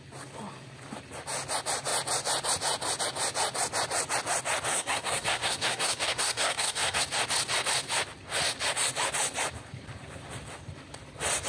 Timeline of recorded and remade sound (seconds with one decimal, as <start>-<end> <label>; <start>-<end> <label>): 0.0-4.7 recorded; 4.7-7.0 remade; 7.0-11.5 recorded